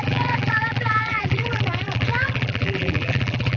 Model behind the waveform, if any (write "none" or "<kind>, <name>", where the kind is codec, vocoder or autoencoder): vocoder, BigVGAN v2